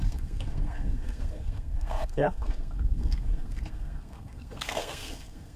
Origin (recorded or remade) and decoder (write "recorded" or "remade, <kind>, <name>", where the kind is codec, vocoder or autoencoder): remade, codec, SNAC